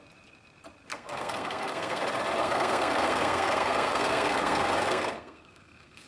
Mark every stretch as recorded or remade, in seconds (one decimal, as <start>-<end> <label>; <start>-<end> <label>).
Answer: 0.0-0.9 recorded; 0.9-2.0 remade; 2.0-2.4 recorded; 2.4-6.1 remade